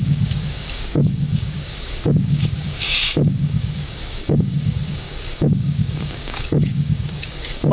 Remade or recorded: remade